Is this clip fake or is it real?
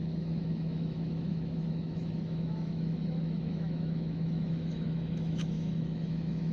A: fake